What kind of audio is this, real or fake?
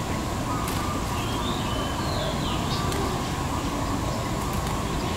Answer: real